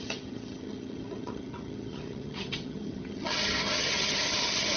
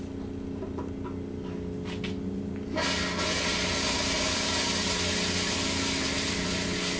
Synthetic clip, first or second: first